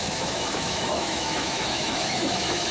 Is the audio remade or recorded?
remade